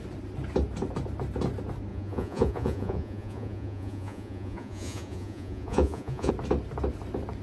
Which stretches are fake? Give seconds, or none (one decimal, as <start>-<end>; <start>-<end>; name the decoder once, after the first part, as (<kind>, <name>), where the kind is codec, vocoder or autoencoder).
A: 1.9-6.3 (vocoder, Vocos)